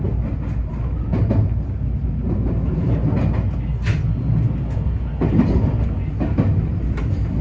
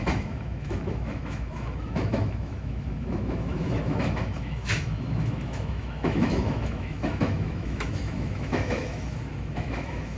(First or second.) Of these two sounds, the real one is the first